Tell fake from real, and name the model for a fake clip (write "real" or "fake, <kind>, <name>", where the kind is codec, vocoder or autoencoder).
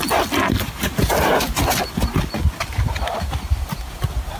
real